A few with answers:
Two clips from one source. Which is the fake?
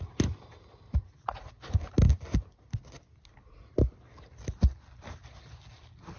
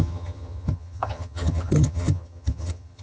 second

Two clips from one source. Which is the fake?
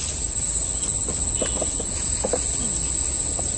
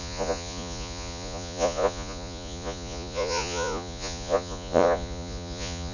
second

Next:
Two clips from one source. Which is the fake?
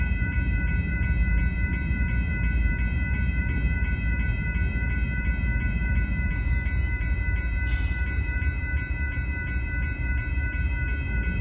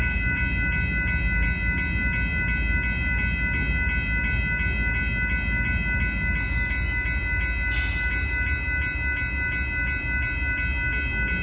first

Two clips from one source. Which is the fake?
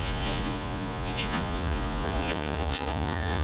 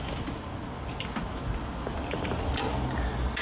first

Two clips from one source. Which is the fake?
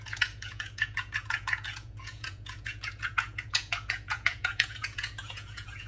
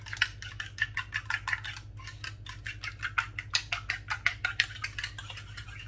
first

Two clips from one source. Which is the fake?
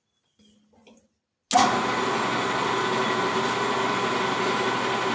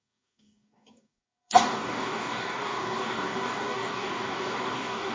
second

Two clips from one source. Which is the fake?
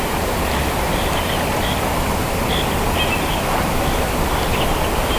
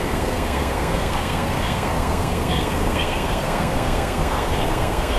second